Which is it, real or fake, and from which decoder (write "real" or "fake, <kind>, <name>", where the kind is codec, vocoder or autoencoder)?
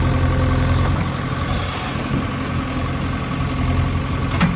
real